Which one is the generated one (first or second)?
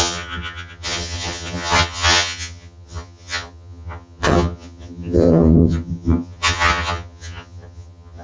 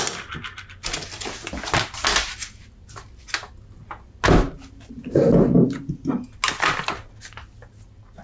first